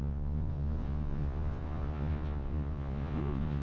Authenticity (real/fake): fake